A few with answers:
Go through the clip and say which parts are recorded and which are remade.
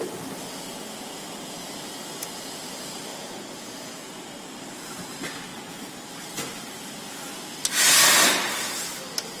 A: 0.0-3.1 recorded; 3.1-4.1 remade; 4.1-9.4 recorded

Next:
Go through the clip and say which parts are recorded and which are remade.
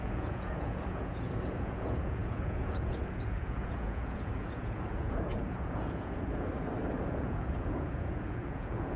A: 0.0-6.5 remade; 6.5-7.0 recorded; 7.0-9.0 remade